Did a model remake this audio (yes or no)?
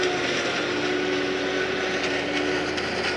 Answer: no